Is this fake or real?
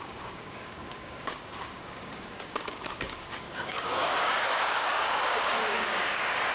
fake